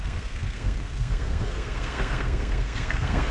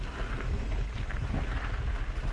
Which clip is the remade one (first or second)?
first